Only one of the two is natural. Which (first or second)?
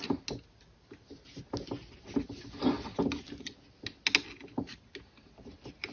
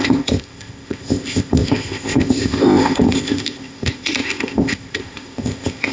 first